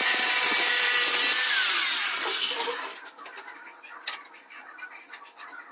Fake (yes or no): no